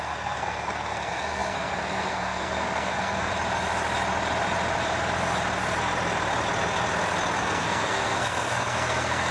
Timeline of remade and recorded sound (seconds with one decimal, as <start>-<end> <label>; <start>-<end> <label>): 0.0-3.3 remade; 3.3-7.4 recorded; 7.4-9.3 remade

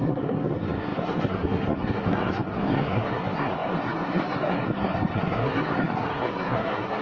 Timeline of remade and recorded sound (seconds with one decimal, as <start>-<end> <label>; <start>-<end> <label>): 0.0-7.0 remade

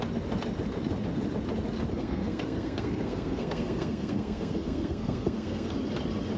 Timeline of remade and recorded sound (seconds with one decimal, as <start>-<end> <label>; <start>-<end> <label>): 0.0-1.9 recorded; 1.9-5.7 remade; 5.7-6.4 recorded

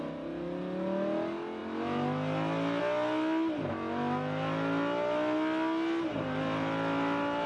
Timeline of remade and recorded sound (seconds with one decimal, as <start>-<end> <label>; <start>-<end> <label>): 0.0-7.5 recorded

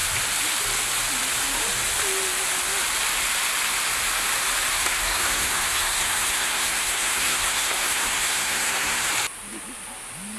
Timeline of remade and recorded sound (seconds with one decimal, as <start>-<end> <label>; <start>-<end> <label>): 0.0-4.7 recorded; 4.7-9.1 remade; 9.1-10.4 recorded

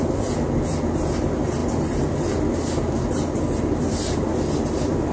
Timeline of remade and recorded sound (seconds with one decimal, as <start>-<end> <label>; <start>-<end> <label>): 0.0-5.1 recorded

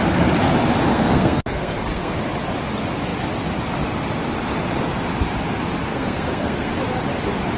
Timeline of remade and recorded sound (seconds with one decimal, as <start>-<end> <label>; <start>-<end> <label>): 0.0-0.9 recorded; 0.9-2.2 remade; 2.2-5.9 recorded; 5.9-6.7 remade; 6.7-7.6 recorded

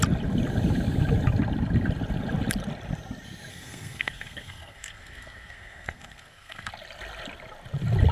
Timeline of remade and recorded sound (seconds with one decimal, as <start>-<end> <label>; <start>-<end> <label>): 0.0-3.5 recorded; 3.5-6.7 remade; 6.7-8.1 recorded